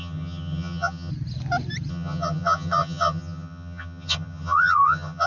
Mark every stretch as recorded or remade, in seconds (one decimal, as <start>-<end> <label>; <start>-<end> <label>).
0.0-1.1 remade; 1.1-1.9 recorded; 1.9-5.3 remade